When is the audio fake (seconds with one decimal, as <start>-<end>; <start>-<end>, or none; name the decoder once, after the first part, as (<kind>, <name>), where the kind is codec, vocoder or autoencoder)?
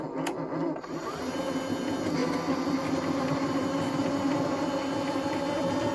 none